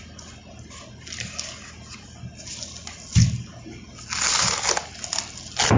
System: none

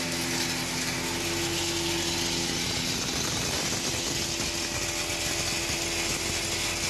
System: none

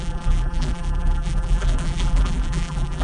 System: vocoder, BigVGAN v2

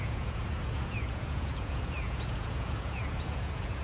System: vocoder, Vocos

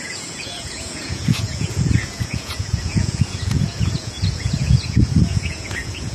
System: vocoder, Vocos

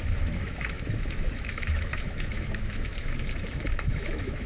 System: autoencoder, DAC-VAE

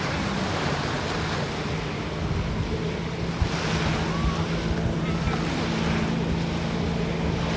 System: none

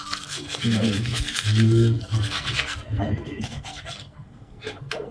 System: codec, SNAC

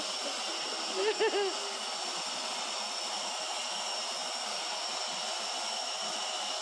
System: none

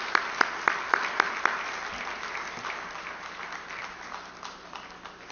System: vocoder, BigVGAN v2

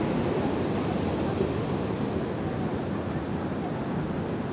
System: none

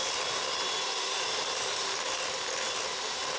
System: none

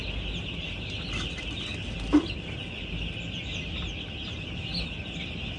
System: none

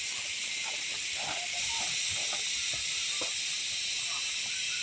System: none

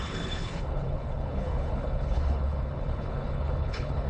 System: codec, HILCodec